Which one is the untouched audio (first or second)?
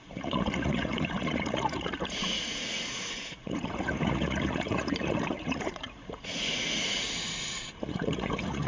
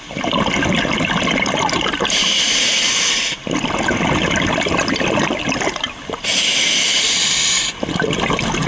second